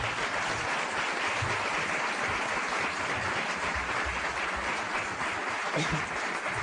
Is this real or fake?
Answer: real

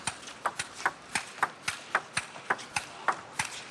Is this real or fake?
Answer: fake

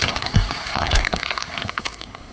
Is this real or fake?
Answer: fake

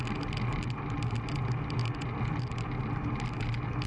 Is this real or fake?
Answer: real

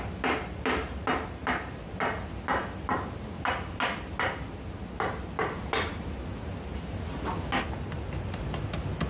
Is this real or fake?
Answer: real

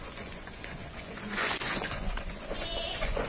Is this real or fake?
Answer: fake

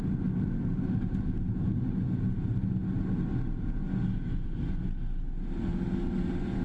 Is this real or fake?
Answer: real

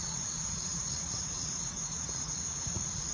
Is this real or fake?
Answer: fake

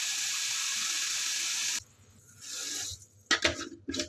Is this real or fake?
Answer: real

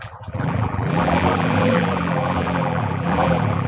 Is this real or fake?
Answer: fake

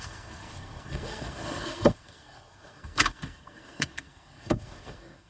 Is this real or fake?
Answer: fake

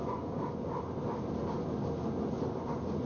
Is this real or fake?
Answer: real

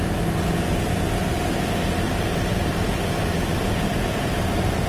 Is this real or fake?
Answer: real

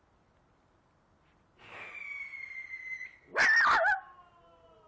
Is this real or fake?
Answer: real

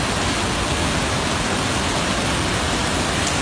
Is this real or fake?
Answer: real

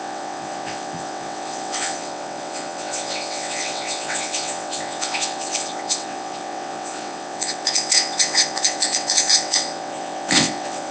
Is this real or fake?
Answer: fake